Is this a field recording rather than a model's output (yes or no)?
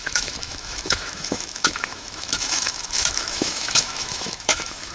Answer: no